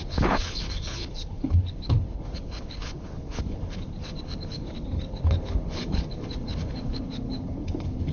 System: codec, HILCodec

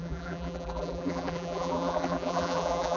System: vocoder, BigVGAN v2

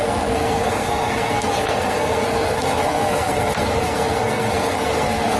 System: codec, SNAC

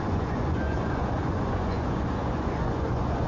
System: vocoder, Vocos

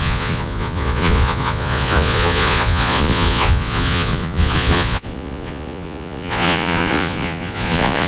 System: vocoder, Vocos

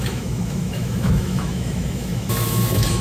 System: autoencoder, DAC-VAE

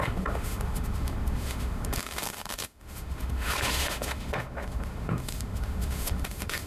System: autoencoder, DAC-VAE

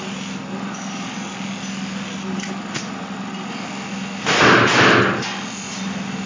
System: none